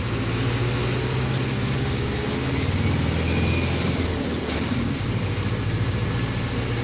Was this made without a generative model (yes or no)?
yes